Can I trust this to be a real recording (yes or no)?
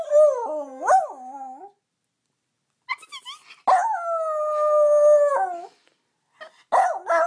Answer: yes